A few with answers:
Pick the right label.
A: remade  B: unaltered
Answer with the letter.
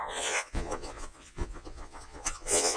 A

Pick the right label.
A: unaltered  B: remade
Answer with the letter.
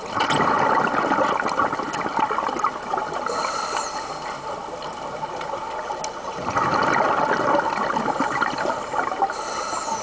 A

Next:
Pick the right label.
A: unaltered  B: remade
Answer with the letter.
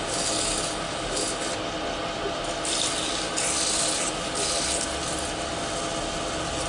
A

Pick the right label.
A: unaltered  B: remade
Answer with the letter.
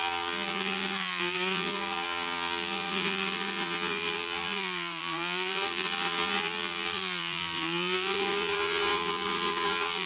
B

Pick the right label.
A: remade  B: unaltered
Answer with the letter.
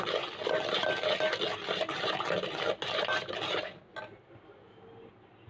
B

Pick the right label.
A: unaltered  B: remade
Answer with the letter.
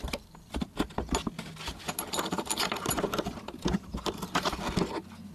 A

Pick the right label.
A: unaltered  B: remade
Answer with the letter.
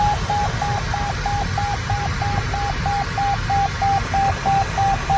A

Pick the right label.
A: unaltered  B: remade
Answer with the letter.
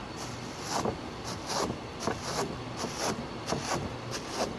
A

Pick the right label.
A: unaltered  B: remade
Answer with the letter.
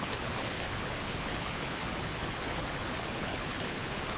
B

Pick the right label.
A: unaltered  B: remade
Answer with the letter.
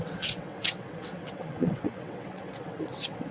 B